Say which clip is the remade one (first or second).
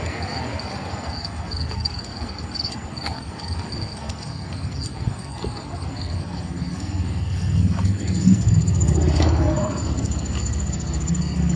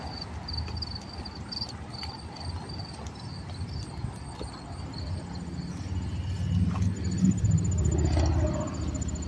first